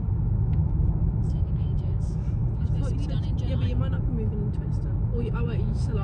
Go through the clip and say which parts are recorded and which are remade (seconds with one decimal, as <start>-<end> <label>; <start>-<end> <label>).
0.0-2.4 remade; 2.4-5.2 recorded; 5.2-6.0 remade